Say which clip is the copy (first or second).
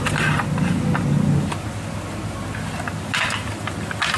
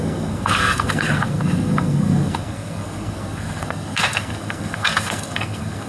second